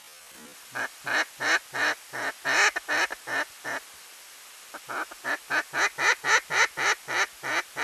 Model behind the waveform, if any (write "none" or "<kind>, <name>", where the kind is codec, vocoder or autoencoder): none